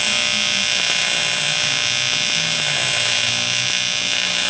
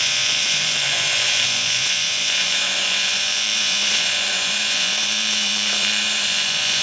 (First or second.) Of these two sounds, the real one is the first